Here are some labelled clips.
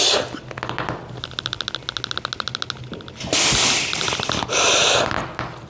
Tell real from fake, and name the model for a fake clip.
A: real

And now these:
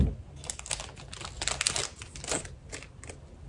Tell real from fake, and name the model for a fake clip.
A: real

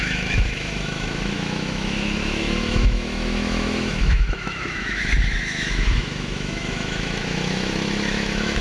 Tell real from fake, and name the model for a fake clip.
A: fake, autoencoder, DAC-VAE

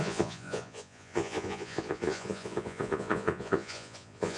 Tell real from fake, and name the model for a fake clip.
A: fake, vocoder, Vocos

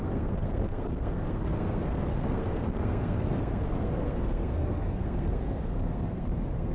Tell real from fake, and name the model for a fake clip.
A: fake, codec, SNAC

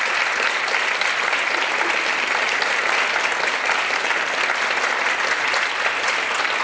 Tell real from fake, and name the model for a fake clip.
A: real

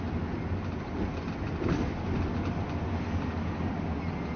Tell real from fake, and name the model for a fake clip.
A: real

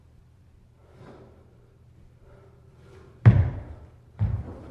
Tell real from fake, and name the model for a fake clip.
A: real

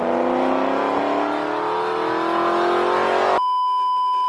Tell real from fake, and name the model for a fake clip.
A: real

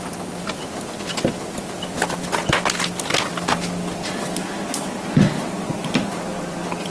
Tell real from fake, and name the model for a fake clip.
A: real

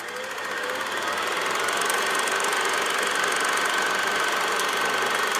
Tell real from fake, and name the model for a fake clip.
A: real